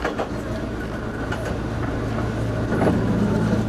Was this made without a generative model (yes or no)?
yes